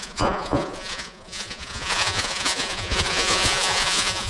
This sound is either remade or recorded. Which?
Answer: remade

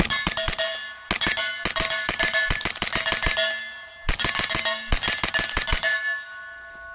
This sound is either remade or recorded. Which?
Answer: recorded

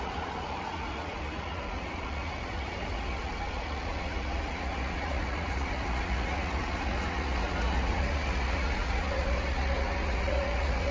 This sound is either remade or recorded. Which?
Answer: remade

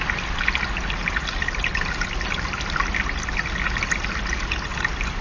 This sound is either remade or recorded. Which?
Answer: recorded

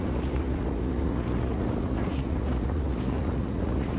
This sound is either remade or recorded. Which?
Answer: remade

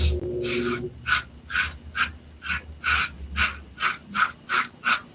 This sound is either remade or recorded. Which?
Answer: recorded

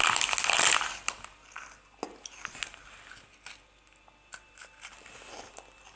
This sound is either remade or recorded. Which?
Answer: recorded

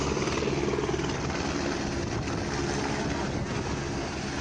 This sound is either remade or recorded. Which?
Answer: recorded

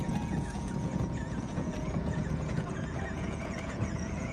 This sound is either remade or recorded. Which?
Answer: remade